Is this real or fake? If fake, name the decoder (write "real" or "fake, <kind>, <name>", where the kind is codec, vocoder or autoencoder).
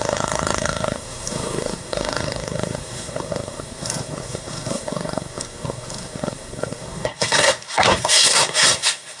fake, codec, SNAC